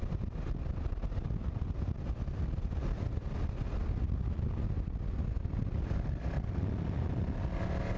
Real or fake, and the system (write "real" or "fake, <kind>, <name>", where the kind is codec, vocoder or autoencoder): real